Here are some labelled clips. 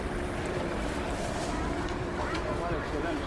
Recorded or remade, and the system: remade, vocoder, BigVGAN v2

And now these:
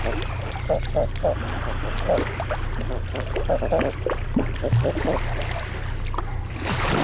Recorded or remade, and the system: recorded